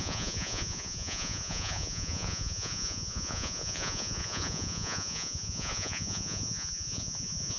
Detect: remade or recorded remade